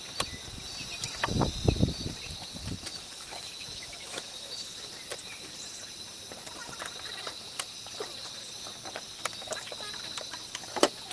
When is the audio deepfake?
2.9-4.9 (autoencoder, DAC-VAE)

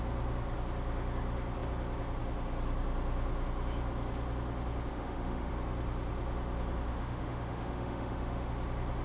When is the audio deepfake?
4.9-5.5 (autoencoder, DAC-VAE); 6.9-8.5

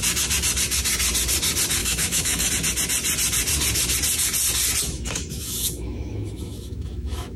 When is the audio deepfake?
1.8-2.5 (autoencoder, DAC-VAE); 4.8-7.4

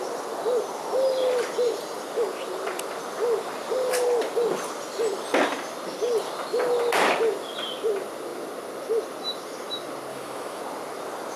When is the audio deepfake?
10.1-10.6 (autoencoder, DAC-VAE)

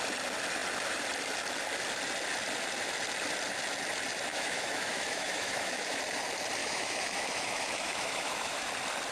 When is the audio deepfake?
4.3-6.0 (autoencoder, DAC-VAE); 6.6-8.7

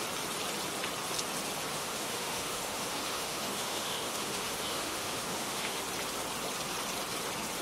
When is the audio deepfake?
1.7-5.8 (autoencoder, DAC-VAE)